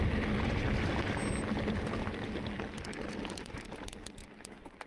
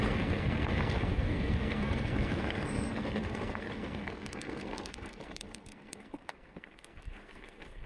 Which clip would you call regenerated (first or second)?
second